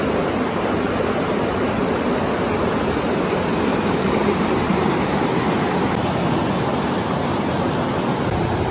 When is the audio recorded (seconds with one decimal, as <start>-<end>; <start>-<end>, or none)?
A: 0.0-3.7; 5.2-8.7